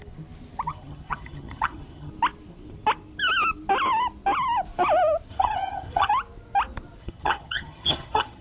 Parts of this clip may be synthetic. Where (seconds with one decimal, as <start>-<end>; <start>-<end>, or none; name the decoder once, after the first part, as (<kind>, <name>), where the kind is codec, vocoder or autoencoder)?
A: 0.7-2.1 (vocoder, HiFi-GAN); 5.3-6.1; 7.0-8.4